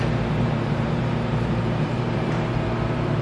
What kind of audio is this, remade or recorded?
remade